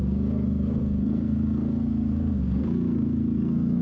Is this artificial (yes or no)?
yes